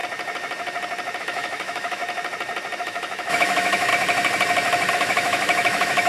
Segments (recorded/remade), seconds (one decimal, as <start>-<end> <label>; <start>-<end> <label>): 0.0-1.2 recorded; 1.2-2.0 remade; 2.0-2.8 recorded; 2.8-3.9 remade; 3.9-4.9 recorded; 4.9-6.1 remade